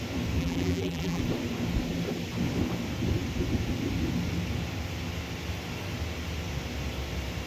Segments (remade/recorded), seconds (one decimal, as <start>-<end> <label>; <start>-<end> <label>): 0.0-0.4 recorded; 0.4-1.2 remade; 1.2-7.5 recorded